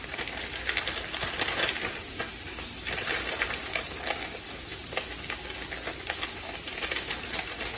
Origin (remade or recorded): recorded